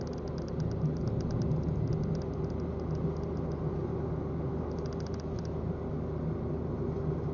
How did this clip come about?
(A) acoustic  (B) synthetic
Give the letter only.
A